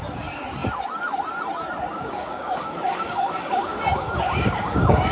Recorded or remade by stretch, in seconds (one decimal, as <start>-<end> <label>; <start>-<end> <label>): 0.0-1.9 recorded; 1.9-5.1 remade